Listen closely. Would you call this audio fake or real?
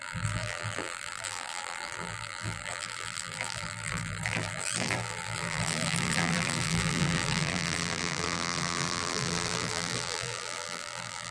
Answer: fake